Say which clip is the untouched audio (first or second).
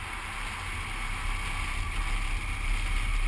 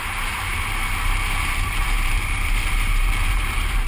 first